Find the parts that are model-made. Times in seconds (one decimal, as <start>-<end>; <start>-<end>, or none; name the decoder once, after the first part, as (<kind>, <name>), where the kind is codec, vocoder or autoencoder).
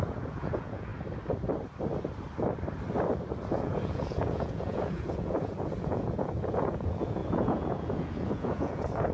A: 0.0-0.9 (vocoder, Vocos); 3.5-9.1